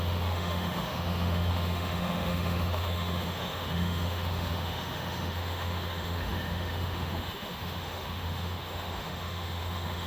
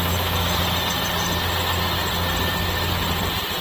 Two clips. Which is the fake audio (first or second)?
first